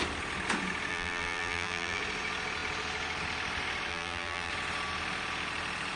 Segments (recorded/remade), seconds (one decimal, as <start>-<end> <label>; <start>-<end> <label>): 0.0-0.9 recorded; 0.9-2.0 remade; 2.0-3.9 recorded; 3.9-4.5 remade; 4.5-6.0 recorded